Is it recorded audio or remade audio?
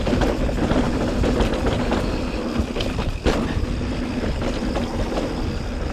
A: recorded